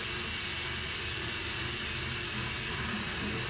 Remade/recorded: recorded